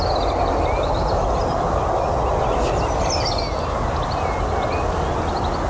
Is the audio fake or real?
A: real